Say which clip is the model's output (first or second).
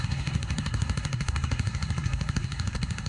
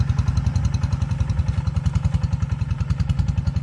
first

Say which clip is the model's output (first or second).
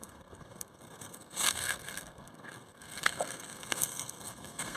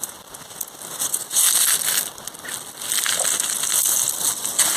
first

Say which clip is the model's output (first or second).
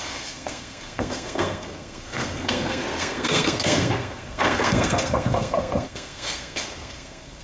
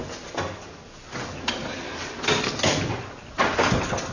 first